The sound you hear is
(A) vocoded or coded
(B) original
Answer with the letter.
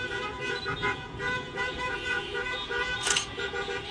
A